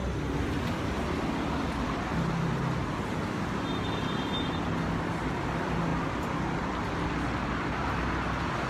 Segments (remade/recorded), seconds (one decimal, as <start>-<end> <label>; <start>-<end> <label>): 0.0-5.9 recorded; 5.9-6.8 remade; 6.8-8.7 recorded